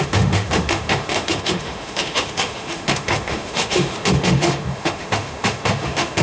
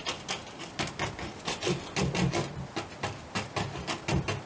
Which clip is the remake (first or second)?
first